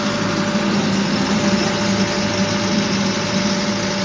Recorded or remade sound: recorded